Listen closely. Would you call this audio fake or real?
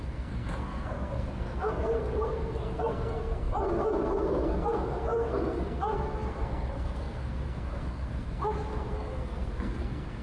fake